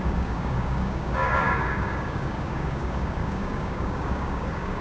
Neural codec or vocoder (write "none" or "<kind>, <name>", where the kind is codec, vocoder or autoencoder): codec, DAC